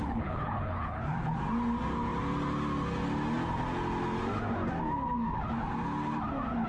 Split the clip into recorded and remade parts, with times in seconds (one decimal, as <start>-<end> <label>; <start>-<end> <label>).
0.0-1.0 remade; 1.0-6.7 recorded